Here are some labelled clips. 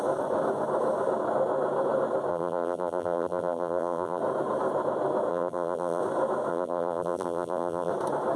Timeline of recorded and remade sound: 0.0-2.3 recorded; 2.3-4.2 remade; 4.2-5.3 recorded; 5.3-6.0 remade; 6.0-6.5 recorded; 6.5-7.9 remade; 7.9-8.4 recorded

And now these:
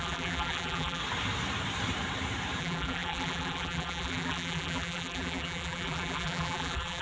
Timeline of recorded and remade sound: 0.0-1.0 remade; 1.0-2.6 recorded; 2.6-7.0 remade

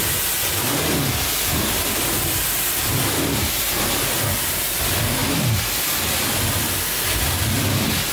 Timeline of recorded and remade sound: 0.0-5.2 remade; 5.2-6.4 recorded; 6.4-8.1 remade

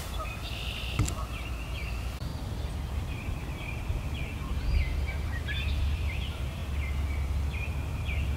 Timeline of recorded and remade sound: 0.0-2.3 remade; 2.3-2.9 recorded; 2.9-4.5 remade; 4.5-5.1 recorded; 5.1-6.6 remade; 6.6-7.7 recorded; 7.7-8.4 remade